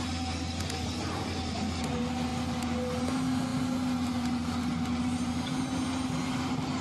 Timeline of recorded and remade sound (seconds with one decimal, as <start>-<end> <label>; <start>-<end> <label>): 0.0-6.8 recorded